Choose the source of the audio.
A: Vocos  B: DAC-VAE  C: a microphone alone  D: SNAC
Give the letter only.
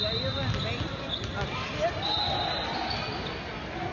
C